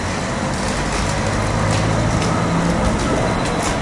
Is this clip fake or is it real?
real